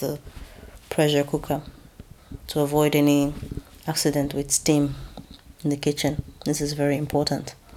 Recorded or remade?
recorded